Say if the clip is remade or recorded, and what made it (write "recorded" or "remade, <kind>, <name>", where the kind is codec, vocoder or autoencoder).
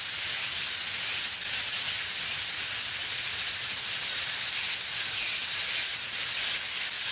recorded